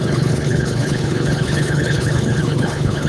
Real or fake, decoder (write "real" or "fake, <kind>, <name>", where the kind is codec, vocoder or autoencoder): fake, codec, HILCodec